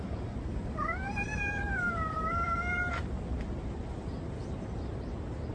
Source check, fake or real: fake